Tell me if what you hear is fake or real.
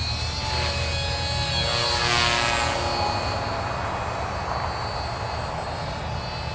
real